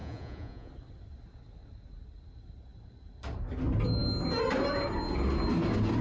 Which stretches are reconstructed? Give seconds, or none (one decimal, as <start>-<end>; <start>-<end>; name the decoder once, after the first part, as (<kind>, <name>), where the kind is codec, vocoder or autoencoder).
0.0-0.7 (vocoder, Vocos)

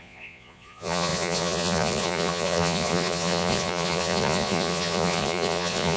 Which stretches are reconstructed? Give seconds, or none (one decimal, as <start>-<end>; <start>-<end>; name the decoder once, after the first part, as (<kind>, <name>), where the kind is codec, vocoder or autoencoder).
0.0-6.0 (vocoder, Vocos)